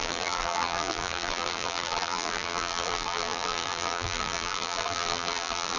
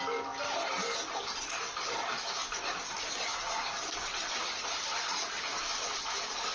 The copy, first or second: first